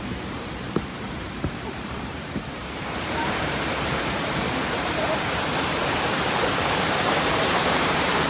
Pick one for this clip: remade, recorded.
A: remade